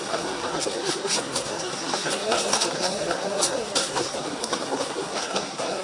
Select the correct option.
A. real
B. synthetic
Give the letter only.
B